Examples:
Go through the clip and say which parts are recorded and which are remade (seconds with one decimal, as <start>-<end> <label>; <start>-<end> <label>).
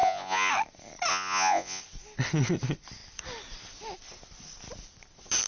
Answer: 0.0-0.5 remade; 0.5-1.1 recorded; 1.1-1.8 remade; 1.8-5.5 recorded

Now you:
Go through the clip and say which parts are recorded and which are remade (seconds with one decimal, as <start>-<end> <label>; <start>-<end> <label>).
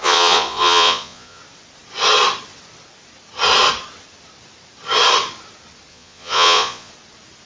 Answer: 0.0-1.4 remade; 1.4-5.9 recorded; 5.9-6.9 remade; 6.9-7.5 recorded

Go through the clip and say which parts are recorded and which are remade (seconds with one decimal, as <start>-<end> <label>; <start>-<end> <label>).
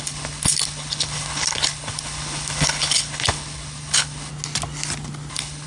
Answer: 0.0-4.3 remade; 4.3-5.3 recorded; 5.3-5.7 remade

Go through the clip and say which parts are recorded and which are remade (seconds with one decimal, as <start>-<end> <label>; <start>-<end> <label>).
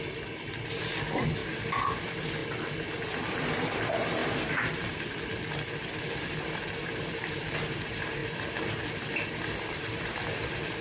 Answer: 0.0-2.4 remade; 2.4-3.4 recorded; 3.4-10.8 remade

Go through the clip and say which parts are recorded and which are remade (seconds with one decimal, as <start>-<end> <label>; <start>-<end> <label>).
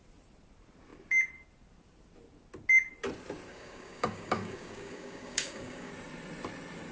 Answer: 0.0-3.5 recorded; 3.5-5.9 remade; 5.9-6.9 recorded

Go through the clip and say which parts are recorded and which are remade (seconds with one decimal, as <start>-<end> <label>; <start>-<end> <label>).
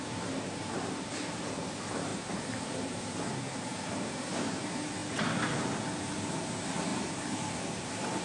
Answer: 0.0-6.9 recorded; 6.9-8.2 remade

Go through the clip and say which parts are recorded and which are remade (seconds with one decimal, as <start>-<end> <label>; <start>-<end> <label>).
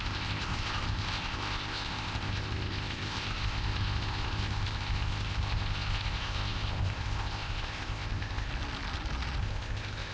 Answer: 0.0-8.5 remade; 8.5-9.4 recorded; 9.4-10.1 remade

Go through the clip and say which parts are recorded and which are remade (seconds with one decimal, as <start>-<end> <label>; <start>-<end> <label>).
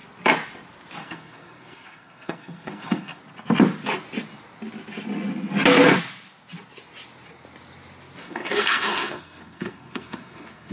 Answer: 0.0-1.0 recorded; 1.0-3.2 remade; 3.2-8.2 recorded; 8.2-10.7 remade